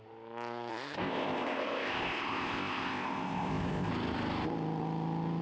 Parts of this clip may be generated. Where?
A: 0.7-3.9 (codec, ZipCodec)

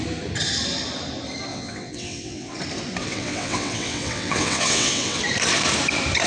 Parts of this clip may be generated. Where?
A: 1.5-2.6 (vocoder, WaveNeXt); 3.0-5.2

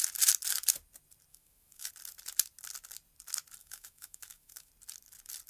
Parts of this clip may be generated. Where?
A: 1.3-1.9 (autoencoder, DAC-VAE); 3.6-4.7

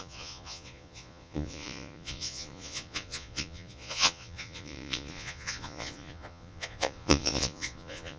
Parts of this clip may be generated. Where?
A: 0.0-8.2 (vocoder, Vocos)

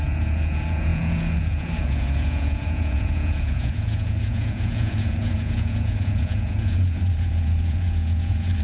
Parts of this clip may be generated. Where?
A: 0.0-8.6 (vocoder, Vocos)

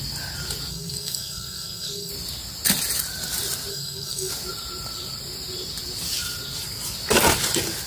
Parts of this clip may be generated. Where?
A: 0.7-2.1 (codec, SNAC); 3.7-4.3

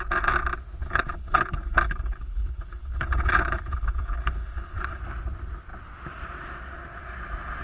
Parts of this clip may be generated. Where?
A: 0.8-5.0 (codec, HILCodec)

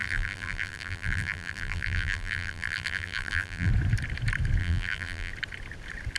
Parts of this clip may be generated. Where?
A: 0.0-3.7 (vocoder, BigVGAN v2); 4.6-5.3